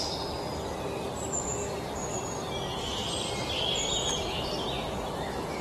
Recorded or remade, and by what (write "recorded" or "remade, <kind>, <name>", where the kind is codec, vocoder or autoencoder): recorded